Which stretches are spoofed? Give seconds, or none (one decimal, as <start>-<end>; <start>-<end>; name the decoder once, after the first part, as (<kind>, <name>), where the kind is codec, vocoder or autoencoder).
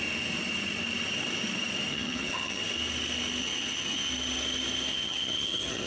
1.9-2.6 (vocoder, HiFi-GAN); 3.4-4.1; 4.9-5.9